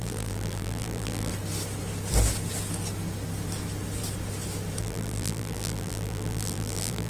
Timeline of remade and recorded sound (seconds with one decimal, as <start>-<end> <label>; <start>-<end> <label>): 0.0-1.3 remade; 1.3-4.8 recorded; 4.8-7.1 remade